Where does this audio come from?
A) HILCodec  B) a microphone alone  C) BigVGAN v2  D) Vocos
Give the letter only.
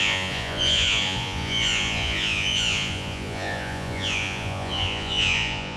D